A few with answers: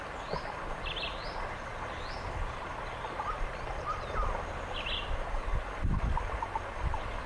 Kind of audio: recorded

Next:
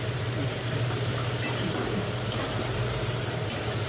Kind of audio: remade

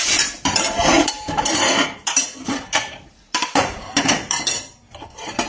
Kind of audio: remade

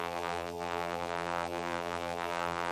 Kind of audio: remade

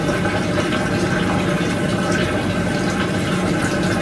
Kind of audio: recorded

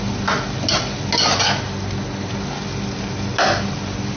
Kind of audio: recorded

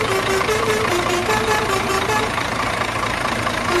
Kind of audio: remade